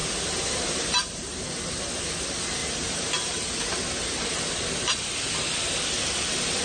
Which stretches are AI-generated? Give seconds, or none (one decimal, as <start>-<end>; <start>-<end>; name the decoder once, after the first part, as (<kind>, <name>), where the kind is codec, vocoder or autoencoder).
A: 0.0-1.8 (vocoder, BigVGAN v2); 2.6-5.1